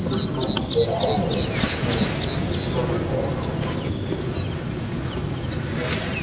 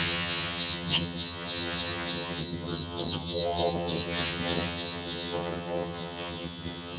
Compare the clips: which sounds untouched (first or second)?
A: first